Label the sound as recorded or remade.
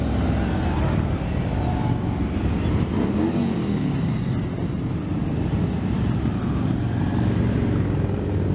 recorded